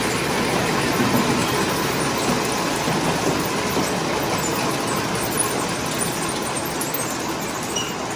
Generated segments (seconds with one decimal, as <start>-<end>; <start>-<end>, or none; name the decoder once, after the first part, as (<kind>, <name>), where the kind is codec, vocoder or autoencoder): 1.4-2.0 (vocoder, BigVGAN v2)